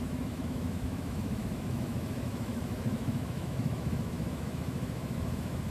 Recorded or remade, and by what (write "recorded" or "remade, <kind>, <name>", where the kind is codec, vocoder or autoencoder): remade, autoencoder, DAC-VAE